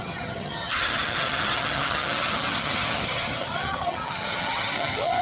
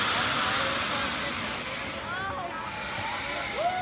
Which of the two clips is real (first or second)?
second